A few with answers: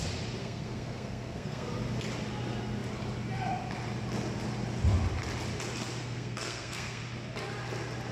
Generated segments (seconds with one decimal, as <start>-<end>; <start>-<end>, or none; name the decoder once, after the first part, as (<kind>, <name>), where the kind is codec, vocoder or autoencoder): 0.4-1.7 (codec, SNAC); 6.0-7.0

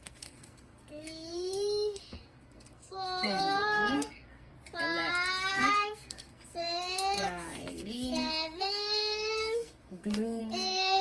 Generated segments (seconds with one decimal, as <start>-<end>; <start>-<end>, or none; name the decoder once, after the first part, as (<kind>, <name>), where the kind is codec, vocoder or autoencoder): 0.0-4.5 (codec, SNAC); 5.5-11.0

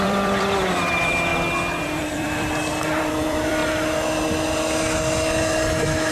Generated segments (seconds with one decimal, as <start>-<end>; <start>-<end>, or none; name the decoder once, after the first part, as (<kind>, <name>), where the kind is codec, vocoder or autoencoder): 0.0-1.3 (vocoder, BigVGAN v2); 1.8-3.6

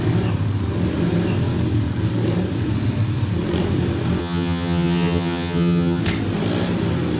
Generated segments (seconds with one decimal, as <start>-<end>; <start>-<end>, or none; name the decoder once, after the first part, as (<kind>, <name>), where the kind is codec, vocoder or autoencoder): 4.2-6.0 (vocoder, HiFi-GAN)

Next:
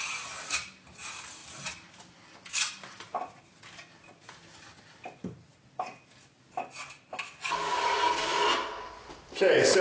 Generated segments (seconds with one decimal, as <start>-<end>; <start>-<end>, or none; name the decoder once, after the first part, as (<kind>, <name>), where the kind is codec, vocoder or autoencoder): 1.4-3.5 (vocoder, BigVGAN v2)

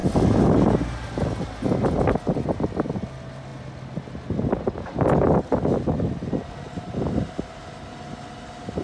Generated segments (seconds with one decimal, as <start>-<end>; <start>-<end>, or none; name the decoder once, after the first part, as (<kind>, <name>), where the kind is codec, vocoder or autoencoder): none